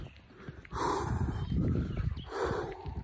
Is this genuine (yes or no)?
no